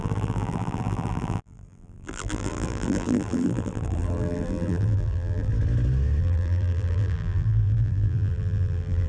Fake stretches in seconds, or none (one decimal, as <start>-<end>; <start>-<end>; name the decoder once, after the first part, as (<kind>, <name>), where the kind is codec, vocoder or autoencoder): 0.0-5.5 (vocoder, BigVGAN v2); 6.2-9.1